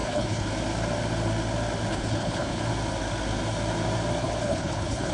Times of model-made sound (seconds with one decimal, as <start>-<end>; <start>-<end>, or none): 0.0-0.5; 1.9-2.6; 4.2-5.1